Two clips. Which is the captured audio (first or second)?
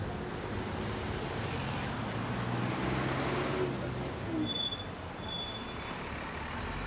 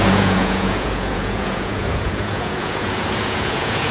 first